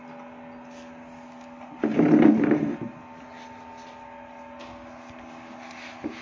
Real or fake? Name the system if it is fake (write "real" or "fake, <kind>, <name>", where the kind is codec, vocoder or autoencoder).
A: real